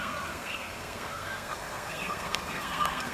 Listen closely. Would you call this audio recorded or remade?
remade